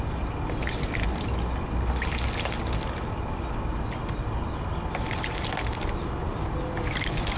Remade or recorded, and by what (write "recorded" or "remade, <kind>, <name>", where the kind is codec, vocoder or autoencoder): recorded